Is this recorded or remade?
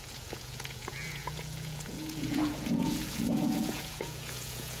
remade